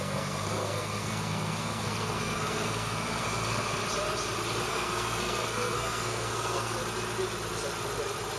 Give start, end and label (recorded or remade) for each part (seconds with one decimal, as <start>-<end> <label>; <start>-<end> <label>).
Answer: 0.0-3.8 remade; 3.8-4.7 recorded; 4.7-6.8 remade; 6.8-8.4 recorded